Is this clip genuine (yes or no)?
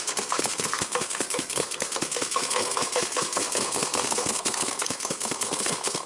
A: no